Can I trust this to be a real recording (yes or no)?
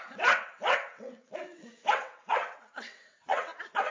no